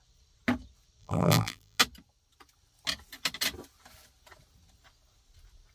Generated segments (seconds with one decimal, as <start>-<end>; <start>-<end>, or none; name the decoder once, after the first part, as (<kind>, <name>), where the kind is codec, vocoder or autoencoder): 1.0-1.8 (vocoder, BigVGAN v2)